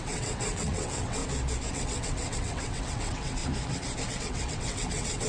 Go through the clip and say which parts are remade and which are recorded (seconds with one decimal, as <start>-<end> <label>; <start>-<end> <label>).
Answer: 0.0-1.2 remade; 1.2-1.7 recorded; 1.7-3.4 remade; 3.4-4.1 recorded; 4.1-5.3 remade